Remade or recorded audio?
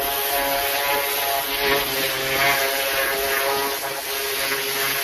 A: recorded